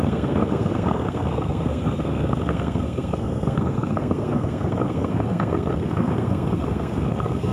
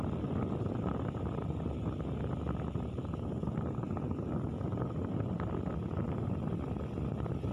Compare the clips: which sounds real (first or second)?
second